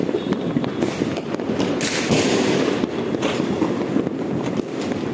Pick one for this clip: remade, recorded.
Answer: recorded